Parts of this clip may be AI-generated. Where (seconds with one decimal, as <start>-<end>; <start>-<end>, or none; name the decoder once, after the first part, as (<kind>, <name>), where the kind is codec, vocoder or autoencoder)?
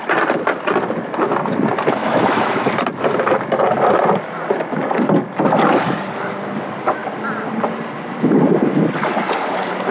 2.0-2.7 (autoencoder, DAC-VAE)